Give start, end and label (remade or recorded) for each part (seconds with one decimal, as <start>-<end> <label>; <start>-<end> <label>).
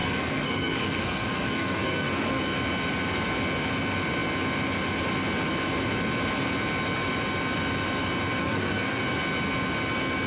0.0-2.4 remade; 2.4-8.4 recorded; 8.4-9.0 remade; 9.0-10.3 recorded